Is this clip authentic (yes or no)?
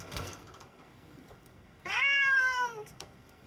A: no